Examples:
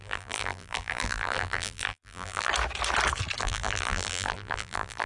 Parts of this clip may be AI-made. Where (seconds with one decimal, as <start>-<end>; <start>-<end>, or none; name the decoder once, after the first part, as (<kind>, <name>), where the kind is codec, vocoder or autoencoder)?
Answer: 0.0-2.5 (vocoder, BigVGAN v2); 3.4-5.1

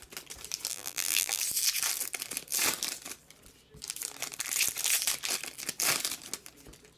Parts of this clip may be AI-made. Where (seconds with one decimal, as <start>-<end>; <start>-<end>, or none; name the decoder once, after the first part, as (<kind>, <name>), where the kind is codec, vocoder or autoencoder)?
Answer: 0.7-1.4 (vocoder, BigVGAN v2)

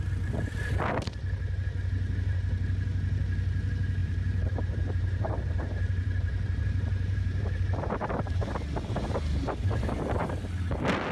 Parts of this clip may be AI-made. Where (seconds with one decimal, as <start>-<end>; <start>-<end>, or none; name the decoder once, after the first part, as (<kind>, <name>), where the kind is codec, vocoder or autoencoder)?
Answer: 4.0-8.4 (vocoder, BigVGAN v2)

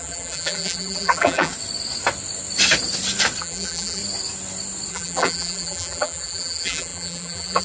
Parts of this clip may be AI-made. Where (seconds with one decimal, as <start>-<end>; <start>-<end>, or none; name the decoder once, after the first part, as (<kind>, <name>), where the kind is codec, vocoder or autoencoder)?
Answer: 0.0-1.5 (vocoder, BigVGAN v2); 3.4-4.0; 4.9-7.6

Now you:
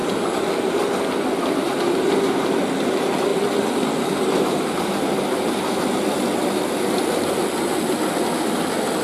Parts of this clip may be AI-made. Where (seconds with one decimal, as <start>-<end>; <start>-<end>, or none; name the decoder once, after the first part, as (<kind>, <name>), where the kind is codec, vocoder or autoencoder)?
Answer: 3.3-3.8 (vocoder, BigVGAN v2)

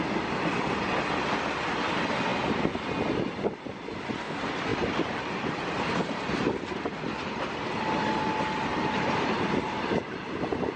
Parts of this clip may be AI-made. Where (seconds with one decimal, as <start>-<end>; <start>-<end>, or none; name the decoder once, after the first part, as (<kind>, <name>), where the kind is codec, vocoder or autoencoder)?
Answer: 4.7-6.5 (vocoder, BigVGAN v2); 8.7-9.9